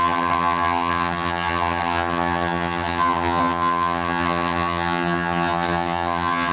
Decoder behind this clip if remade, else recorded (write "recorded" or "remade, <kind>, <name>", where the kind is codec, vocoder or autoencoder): remade, vocoder, HiFi-GAN